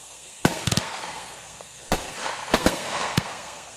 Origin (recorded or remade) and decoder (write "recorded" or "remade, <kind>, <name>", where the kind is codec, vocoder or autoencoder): remade, codec, SNAC